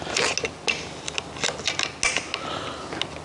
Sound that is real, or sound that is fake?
real